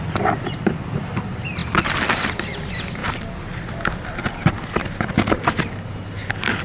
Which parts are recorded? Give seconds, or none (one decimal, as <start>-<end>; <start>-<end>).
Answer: 0.0-6.6

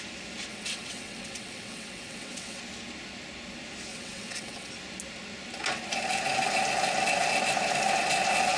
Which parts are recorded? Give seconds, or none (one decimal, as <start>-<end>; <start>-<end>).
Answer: 0.0-0.5; 2.6-3.9; 4.7-8.6

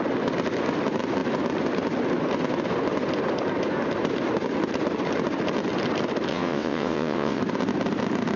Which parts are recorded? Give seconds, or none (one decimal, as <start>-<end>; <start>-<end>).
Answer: 0.0-6.3; 7.4-8.4

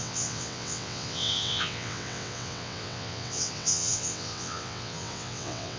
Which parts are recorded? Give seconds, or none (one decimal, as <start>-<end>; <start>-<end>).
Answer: none

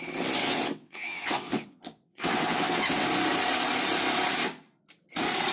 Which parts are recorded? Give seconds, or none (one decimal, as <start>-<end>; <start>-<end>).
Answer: 0.0-0.4; 3.1-5.5

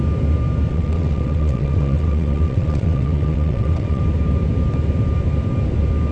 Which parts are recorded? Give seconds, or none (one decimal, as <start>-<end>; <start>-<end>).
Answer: 0.0-0.7; 4.0-6.1

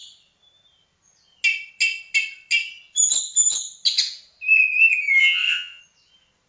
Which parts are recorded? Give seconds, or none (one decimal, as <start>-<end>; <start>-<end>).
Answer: 0.0-5.2; 5.8-6.5

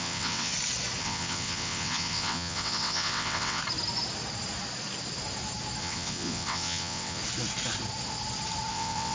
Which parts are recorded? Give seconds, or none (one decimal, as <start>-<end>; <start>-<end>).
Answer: 0.5-1.0; 3.6-5.8; 7.2-8.7